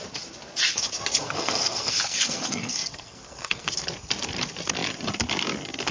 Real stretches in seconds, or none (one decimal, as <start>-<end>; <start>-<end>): 0.0-0.7; 3.7-5.9